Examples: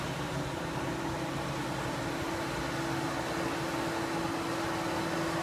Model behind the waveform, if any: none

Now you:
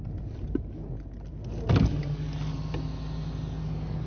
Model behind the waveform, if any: none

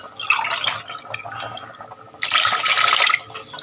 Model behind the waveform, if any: none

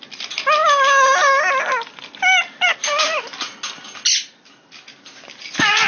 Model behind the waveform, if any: none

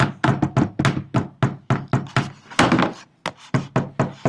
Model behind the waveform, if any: none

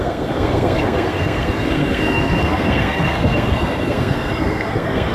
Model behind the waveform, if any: codec, SNAC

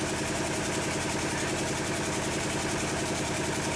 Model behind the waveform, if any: none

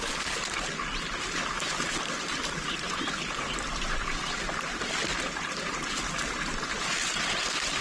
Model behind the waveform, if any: none